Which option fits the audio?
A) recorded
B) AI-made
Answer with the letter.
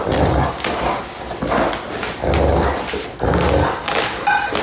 A